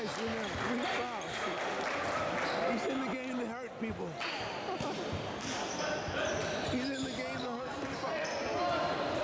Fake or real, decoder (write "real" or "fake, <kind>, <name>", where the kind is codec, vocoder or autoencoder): real